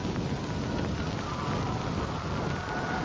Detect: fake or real real